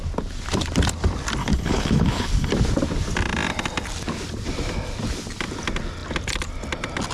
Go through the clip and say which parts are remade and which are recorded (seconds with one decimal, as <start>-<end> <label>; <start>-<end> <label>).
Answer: 0.0-1.4 recorded; 1.4-2.5 remade; 2.5-7.1 recorded